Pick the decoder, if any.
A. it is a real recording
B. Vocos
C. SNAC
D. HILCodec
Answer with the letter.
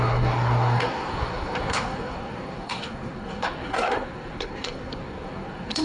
C